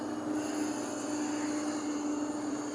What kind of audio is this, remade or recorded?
recorded